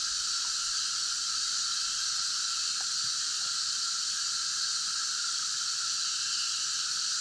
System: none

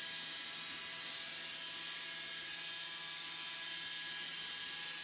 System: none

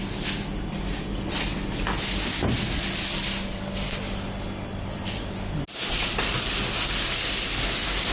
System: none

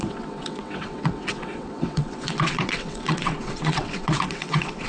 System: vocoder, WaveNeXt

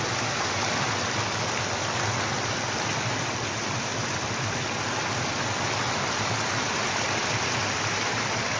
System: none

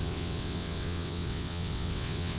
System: vocoder, WaveNeXt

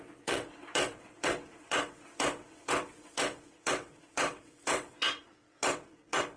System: vocoder, WaveNeXt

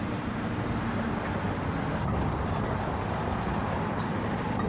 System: none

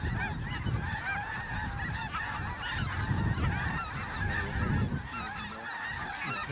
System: none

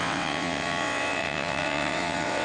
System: vocoder, WaveNeXt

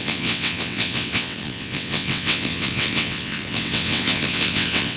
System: vocoder, WaveNeXt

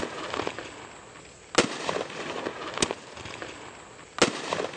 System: none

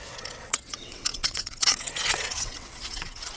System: vocoder, WaveNeXt